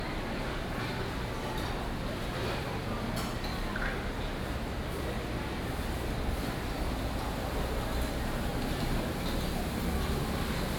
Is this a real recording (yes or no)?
yes